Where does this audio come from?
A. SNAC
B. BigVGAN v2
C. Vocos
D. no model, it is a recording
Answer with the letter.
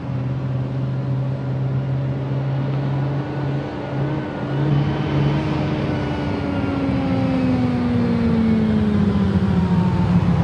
D